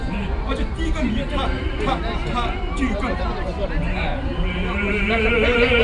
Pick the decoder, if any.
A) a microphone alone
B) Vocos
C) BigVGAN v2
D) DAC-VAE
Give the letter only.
C